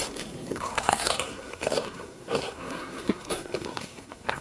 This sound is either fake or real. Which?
fake